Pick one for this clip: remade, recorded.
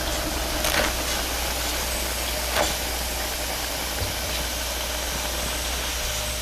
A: recorded